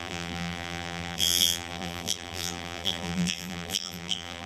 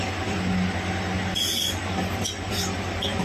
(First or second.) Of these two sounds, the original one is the second